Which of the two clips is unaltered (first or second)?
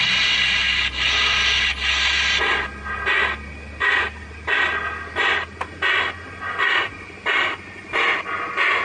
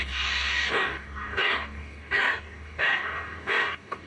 first